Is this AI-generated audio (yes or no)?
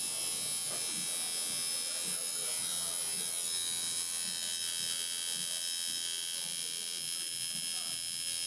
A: no